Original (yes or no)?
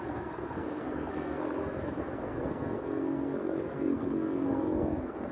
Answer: no